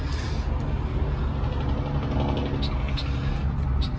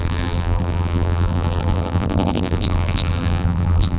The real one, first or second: first